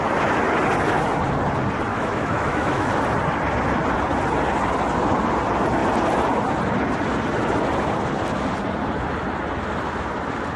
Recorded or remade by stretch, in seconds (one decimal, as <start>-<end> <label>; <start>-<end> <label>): 0.0-1.9 recorded; 1.9-2.9 remade; 2.9-10.6 recorded